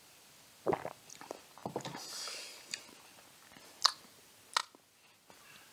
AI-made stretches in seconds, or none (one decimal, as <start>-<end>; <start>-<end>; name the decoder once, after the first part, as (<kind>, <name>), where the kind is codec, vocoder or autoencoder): 1.6-2.7 (vocoder, BigVGAN v2)